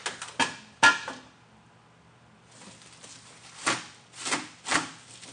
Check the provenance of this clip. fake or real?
real